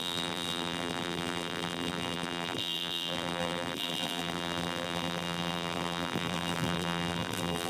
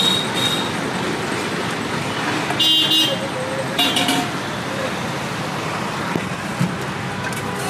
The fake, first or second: first